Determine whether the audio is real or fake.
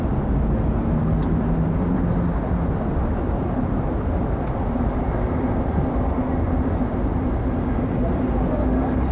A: real